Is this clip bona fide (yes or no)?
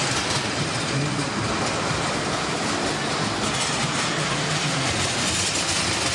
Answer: yes